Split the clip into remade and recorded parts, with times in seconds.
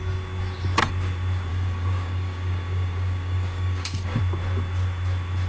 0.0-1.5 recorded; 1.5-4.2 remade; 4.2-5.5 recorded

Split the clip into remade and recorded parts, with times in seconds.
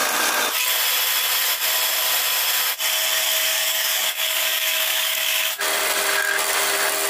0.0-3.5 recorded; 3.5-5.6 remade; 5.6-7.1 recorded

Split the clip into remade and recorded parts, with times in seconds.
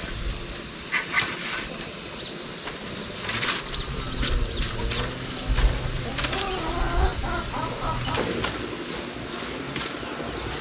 0.0-10.6 recorded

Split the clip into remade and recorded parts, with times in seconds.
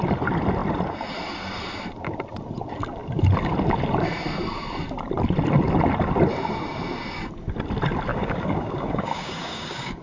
0.0-8.1 recorded; 8.1-10.0 remade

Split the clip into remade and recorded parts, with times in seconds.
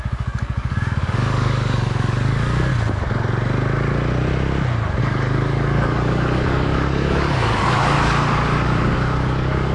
0.0-2.7 remade; 2.7-5.0 recorded; 5.0-9.7 remade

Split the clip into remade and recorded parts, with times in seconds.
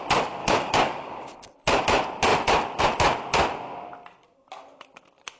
0.0-0.4 recorded; 0.4-1.5 remade; 1.5-5.4 recorded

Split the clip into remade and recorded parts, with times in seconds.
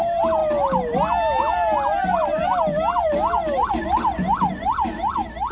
0.0-5.5 recorded